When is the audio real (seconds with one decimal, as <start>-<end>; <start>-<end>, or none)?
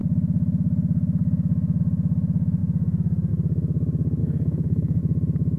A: 0.0-4.2; 5.0-5.6